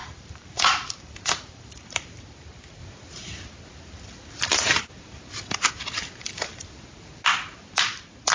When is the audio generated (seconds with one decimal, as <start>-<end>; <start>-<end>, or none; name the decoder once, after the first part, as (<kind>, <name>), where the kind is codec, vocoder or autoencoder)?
0.0-2.2 (vocoder, BigVGAN v2)